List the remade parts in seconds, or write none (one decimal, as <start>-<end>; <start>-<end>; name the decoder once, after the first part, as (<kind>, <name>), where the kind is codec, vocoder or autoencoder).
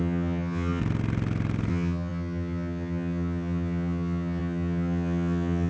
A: 0.0-0.8 (vocoder, HiFi-GAN); 1.7-5.7